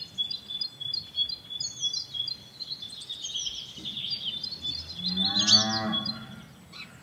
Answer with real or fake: real